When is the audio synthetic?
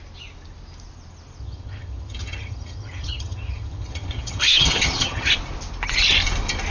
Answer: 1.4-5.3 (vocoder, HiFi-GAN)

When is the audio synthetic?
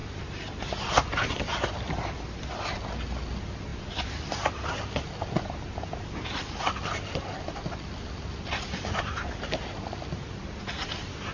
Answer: none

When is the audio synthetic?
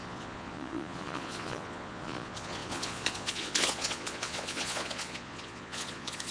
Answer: 0.0-6.3 (vocoder, Vocos)